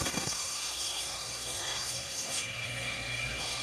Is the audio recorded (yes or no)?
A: no